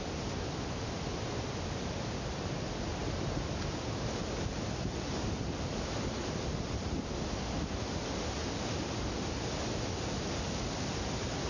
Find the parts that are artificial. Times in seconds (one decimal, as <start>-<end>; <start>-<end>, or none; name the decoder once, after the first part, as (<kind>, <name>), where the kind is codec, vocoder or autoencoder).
none